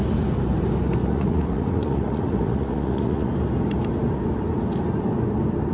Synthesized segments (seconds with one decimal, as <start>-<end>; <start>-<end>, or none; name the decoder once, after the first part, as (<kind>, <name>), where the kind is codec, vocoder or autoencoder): 1.0-3.3 (vocoder, Vocos)